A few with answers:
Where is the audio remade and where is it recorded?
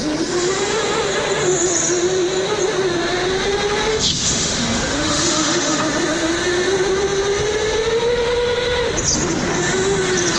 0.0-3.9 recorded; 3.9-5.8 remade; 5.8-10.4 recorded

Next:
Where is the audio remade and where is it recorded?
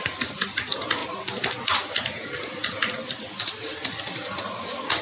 0.0-5.0 recorded